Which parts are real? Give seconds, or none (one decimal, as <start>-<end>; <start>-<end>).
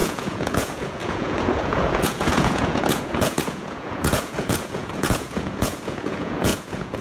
none